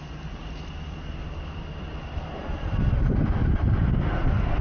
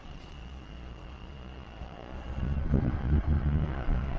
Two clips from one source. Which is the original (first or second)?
first